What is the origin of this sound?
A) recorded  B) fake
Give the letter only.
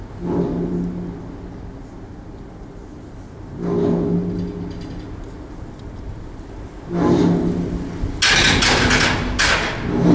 A